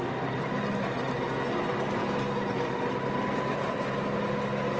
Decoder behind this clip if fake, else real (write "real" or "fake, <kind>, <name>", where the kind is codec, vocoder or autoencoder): real